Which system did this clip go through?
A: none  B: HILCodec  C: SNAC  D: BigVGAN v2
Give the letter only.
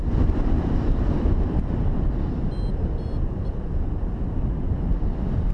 A